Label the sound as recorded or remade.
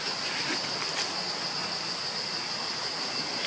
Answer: recorded